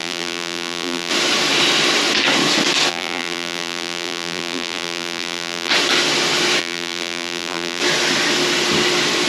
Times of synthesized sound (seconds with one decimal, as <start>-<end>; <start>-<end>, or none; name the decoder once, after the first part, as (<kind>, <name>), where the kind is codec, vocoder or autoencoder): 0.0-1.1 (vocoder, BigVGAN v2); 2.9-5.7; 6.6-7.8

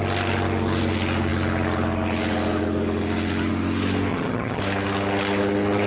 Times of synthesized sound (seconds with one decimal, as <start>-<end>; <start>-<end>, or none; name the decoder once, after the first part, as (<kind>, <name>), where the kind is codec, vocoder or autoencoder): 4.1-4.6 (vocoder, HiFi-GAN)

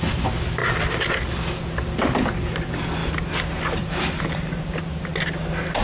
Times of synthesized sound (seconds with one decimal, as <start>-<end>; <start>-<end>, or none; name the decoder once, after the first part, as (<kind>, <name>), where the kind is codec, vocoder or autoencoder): none

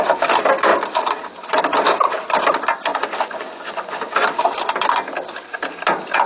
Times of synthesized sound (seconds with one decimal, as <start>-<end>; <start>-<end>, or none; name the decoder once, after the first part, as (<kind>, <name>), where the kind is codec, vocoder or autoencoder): 2.9-4.0 (vocoder, Vocos)